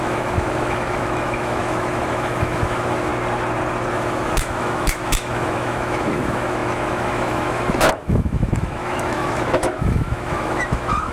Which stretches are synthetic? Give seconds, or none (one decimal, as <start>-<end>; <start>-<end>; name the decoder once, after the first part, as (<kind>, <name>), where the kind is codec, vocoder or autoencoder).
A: 0.0-3.1 (autoencoder, DAC-VAE); 3.9-11.1